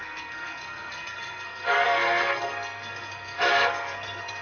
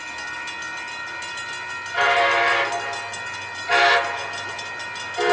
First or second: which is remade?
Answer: first